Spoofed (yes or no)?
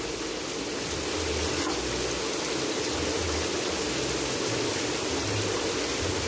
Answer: no